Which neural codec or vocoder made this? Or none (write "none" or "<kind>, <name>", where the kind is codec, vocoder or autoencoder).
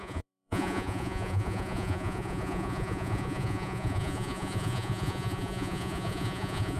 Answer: vocoder, Vocos